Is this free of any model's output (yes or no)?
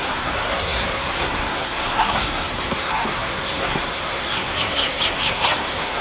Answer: no